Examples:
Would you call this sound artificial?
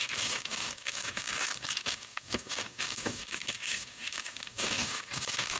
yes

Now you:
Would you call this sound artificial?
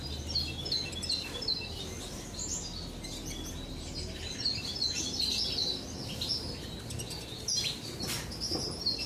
no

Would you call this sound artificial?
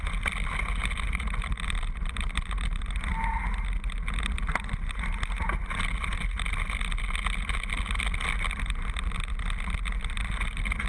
no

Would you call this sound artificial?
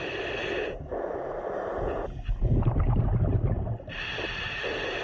no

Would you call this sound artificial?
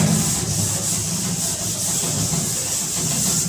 no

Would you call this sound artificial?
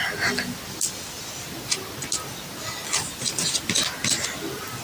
no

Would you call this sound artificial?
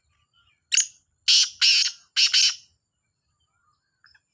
no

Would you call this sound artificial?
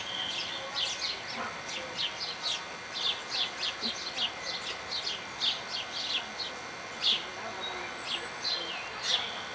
no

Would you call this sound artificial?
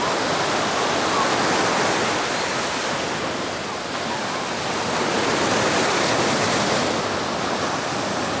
no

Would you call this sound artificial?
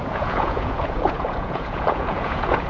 yes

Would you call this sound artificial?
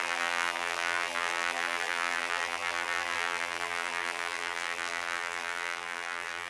yes